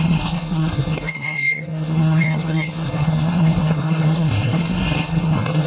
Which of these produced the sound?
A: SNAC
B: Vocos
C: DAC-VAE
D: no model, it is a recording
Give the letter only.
A